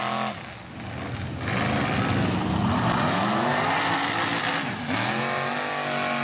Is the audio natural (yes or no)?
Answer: yes